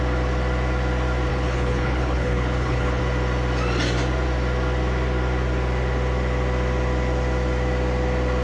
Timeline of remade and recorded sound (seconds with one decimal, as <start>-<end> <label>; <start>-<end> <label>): 0.0-1.3 recorded; 1.3-3.0 remade; 3.0-8.4 recorded